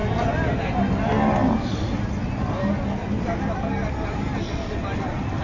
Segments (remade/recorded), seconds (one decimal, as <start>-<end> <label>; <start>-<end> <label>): 0.0-5.4 recorded